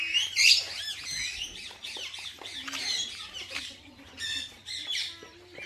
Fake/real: real